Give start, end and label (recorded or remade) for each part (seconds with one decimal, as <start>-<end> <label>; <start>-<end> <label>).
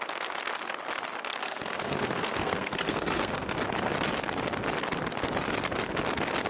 0.0-1.4 recorded; 1.4-3.5 remade; 3.5-6.5 recorded